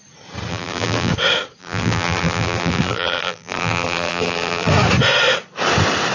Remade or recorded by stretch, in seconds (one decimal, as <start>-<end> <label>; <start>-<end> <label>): 0.0-0.5 recorded; 0.5-1.1 remade; 1.1-1.6 recorded; 1.6-4.7 remade; 4.7-6.1 recorded